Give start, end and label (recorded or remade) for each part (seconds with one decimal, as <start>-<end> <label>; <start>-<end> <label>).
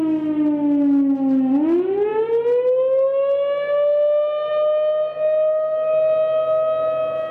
0.0-7.3 recorded